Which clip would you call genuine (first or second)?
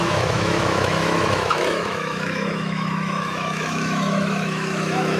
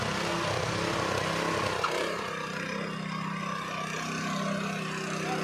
second